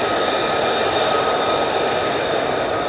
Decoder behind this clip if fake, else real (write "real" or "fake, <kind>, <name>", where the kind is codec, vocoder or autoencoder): real